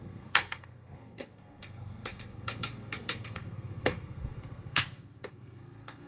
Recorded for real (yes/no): no